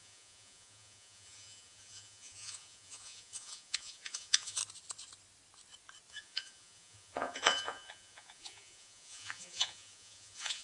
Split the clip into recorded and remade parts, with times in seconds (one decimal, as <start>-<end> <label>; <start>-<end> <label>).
0.0-4.6 remade; 4.6-6.1 recorded; 6.1-10.6 remade